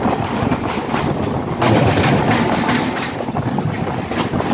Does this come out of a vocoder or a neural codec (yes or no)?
no